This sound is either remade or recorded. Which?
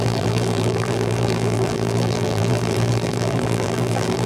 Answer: remade